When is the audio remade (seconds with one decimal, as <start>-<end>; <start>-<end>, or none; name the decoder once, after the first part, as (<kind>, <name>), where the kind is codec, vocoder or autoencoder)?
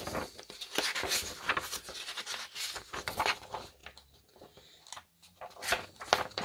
none